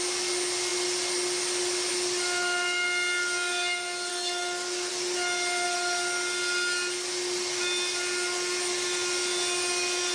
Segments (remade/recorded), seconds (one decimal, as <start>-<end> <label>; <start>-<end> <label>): 0.0-4.1 recorded; 4.1-4.9 remade; 4.9-10.1 recorded